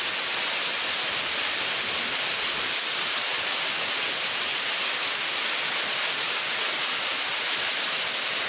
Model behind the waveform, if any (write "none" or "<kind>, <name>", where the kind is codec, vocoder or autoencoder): none